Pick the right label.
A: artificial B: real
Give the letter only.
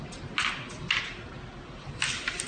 B